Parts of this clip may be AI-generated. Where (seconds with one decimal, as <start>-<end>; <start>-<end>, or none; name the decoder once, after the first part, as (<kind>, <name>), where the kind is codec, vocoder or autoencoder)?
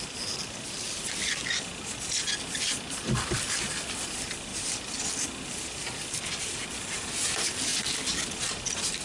0.0-1.4 (vocoder, BigVGAN v2); 2.1-4.5; 6.2-7.7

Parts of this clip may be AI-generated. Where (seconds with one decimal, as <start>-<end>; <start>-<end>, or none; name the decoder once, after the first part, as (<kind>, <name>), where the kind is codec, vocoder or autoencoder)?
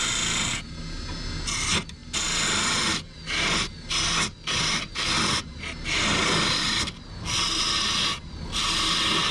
none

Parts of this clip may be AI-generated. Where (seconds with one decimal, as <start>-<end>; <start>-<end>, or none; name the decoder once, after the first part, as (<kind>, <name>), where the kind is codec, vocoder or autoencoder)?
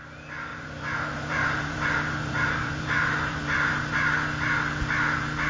0.5-3.8 (vocoder, BigVGAN v2)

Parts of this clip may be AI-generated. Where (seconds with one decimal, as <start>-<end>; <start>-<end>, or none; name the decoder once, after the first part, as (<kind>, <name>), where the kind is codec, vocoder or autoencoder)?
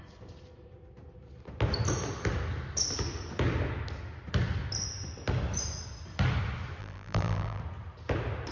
6.8-7.6 (vocoder, BigVGAN v2)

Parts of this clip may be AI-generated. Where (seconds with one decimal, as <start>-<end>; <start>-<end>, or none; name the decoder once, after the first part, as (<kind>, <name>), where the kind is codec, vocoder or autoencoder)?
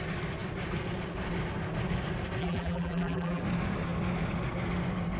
2.4-3.4 (vocoder, BigVGAN v2)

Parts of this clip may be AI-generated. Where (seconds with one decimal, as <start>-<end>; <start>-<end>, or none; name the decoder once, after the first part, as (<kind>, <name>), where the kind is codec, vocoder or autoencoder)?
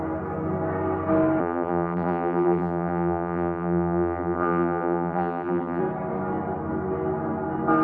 1.4-5.8 (vocoder, BigVGAN v2)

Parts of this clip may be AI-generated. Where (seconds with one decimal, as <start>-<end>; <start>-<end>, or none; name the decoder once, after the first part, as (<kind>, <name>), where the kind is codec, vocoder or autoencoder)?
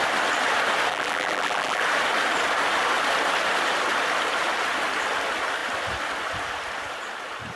0.9-1.8 (vocoder, BigVGAN v2)